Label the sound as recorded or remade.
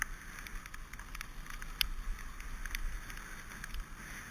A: recorded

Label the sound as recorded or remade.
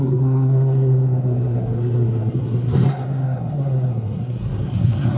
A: remade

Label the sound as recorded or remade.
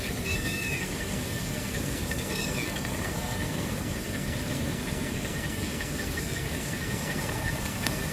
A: remade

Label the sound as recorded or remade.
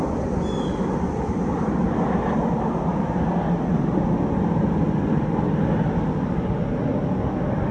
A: recorded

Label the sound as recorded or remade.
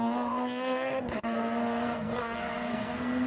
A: remade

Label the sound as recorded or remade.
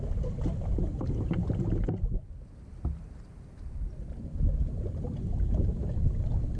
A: recorded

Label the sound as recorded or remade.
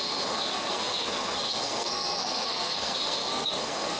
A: remade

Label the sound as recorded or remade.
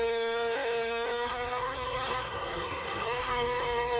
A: remade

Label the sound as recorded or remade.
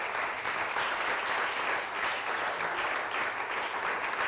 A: recorded